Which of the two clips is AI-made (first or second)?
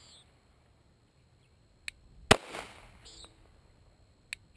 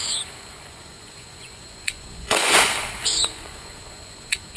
second